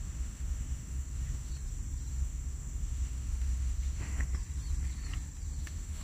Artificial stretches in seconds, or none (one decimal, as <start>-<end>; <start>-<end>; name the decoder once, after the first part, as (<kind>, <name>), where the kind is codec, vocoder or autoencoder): 0.0-1.5 (autoencoder, DAC-VAE); 2.1-4.3; 5.6-6.0